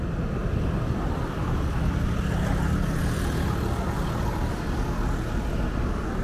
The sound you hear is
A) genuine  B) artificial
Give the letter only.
A